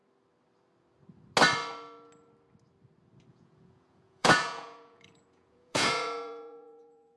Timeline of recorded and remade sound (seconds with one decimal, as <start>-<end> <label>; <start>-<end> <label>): 0.0-3.3 recorded; 3.3-7.2 remade